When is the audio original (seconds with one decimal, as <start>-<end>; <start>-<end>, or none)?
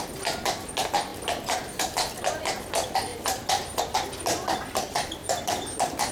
0.0-3.1; 3.8-5.2